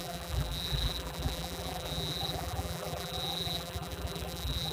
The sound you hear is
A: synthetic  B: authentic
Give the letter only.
A